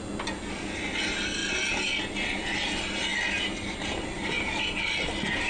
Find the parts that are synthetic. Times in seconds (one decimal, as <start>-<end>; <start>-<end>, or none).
none

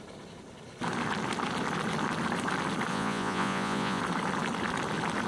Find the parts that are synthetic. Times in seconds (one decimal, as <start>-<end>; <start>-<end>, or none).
2.9-4.0

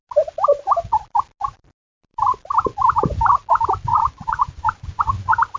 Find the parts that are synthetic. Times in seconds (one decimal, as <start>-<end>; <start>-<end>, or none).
3.9-5.0

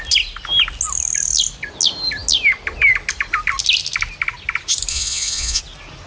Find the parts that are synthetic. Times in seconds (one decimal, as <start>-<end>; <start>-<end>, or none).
4.9-5.6

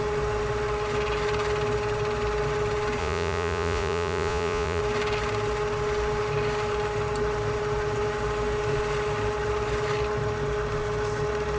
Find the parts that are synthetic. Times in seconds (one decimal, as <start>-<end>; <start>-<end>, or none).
3.0-4.8